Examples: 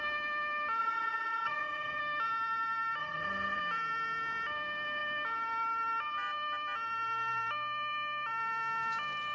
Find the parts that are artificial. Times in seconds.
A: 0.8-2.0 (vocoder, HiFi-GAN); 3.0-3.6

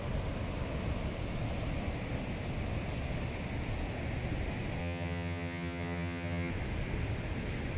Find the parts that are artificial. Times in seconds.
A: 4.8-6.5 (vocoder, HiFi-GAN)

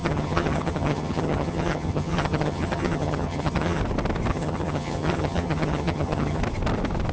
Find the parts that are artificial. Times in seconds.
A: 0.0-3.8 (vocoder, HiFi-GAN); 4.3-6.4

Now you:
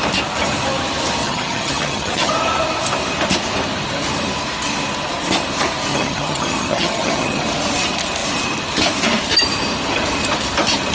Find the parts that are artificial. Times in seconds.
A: 1.2-2.3 (vocoder, HiFi-GAN); 5.9-7.4